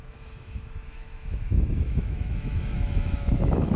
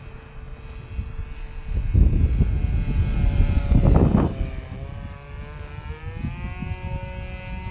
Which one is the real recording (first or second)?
second